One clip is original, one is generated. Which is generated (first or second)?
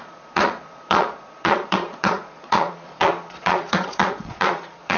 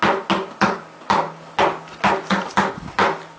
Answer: first